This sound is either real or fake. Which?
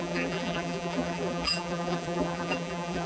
fake